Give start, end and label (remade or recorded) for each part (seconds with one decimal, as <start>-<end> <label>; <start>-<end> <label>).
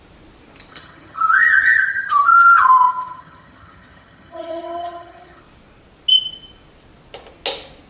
0.0-0.7 recorded; 0.7-5.4 remade; 5.4-7.9 recorded